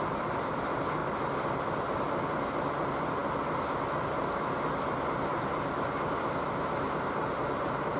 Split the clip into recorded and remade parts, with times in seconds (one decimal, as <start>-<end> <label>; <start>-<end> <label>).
0.0-8.0 recorded